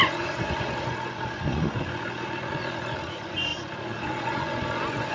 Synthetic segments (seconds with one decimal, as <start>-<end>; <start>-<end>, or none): 0.0-5.1